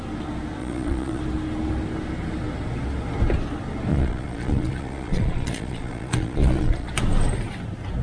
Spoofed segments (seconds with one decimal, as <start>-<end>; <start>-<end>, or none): 0.6-1.2; 3.9-6.9